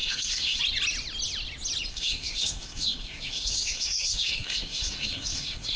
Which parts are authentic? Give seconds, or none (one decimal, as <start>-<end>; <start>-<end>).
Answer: 0.6-1.9